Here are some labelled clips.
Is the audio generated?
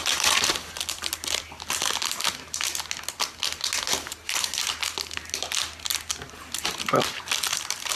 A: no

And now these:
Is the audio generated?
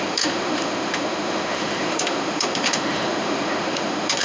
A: yes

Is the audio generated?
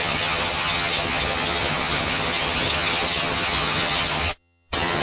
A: yes